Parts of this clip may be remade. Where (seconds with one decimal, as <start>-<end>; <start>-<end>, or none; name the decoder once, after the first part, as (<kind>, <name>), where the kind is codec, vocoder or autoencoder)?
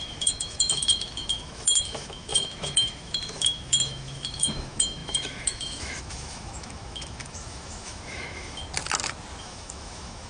0.0-8.6 (autoencoder, DAC-VAE); 9.4-10.3